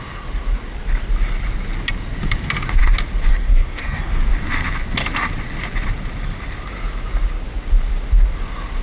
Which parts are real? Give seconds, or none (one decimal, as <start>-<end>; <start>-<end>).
0.0-3.3; 4.1-8.8